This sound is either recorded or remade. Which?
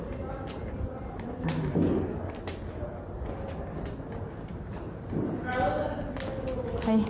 recorded